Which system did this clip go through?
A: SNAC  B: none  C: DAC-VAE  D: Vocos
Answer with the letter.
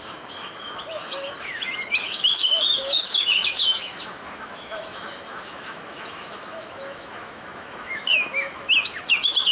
C